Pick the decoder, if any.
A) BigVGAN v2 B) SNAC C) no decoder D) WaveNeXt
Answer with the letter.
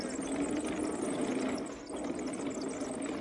C